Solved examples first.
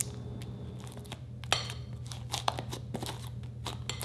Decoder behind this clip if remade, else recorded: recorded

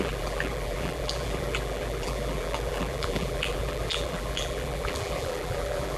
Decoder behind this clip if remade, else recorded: remade, vocoder, BigVGAN v2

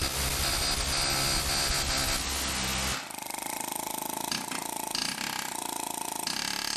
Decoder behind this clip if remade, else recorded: recorded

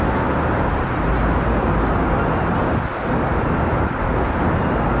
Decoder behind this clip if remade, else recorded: recorded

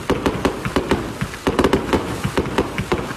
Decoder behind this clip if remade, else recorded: recorded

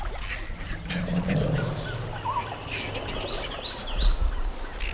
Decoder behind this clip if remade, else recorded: recorded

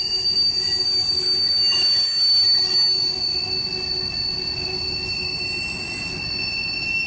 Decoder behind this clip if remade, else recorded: recorded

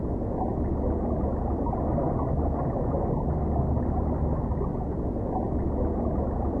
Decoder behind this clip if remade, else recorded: recorded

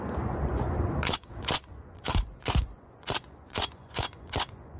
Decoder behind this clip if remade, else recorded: remade, vocoder, Vocos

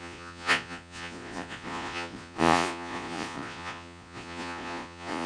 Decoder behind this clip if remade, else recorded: remade, vocoder, Vocos